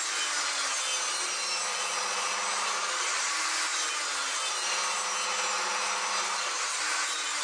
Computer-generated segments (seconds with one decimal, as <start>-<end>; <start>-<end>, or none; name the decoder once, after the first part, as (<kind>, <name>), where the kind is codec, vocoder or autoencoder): 1.7-2.3 (vocoder, Vocos)